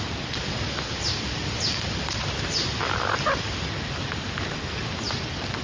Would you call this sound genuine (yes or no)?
yes